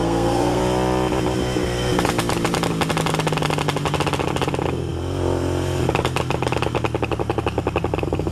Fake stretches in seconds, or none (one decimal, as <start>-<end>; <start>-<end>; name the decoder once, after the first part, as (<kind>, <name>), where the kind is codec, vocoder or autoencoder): 0.0-0.6 (codec, SNAC)